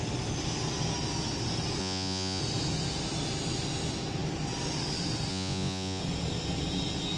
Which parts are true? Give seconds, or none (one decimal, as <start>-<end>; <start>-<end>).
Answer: 0.0-1.8; 2.4-5.3; 6.0-7.2